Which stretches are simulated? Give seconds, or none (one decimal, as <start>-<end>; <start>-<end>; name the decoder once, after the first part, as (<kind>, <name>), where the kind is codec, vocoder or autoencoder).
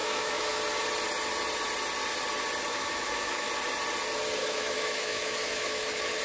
0.0-0.6 (autoencoder, DAC-VAE); 2.7-3.5; 4.4-6.2